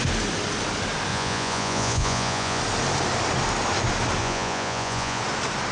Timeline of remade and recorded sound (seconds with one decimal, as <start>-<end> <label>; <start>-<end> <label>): 0.0-1.1 recorded; 1.1-2.6 remade; 2.6-4.2 recorded; 4.2-5.2 remade; 5.2-5.7 recorded